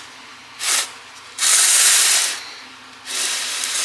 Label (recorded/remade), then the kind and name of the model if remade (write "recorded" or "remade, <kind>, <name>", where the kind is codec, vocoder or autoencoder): recorded